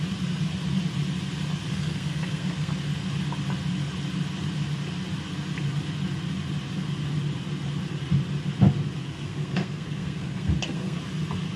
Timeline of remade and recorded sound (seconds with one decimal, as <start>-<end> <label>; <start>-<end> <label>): 0.0-1.7 recorded; 1.7-2.7 remade; 2.7-9.0 recorded; 9.0-11.0 remade; 11.0-11.6 recorded